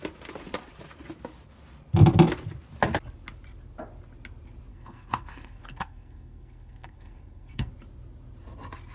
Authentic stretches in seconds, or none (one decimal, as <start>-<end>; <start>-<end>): 0.0-4.7; 7.7-8.9